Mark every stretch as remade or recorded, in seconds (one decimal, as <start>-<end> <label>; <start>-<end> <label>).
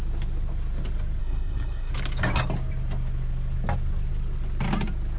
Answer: 0.0-1.2 recorded; 1.2-1.9 remade; 1.9-5.2 recorded